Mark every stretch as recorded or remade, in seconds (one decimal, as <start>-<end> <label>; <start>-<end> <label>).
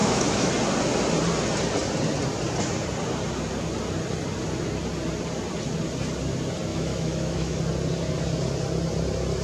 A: 0.0-0.5 remade; 0.5-6.7 recorded; 6.7-7.6 remade; 7.6-9.4 recorded